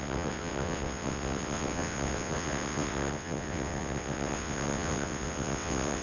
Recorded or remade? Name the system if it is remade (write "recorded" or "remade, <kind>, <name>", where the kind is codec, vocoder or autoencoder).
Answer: remade, vocoder, WaveNeXt